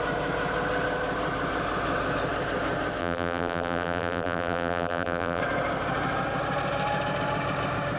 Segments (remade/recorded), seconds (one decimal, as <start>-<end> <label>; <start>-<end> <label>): 0.0-3.0 recorded; 3.0-5.4 remade; 5.4-8.0 recorded